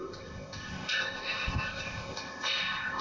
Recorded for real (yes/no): no